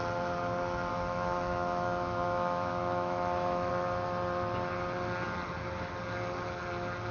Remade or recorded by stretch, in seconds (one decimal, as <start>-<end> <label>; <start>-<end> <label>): 0.0-0.9 recorded; 0.9-3.7 remade; 3.7-7.1 recorded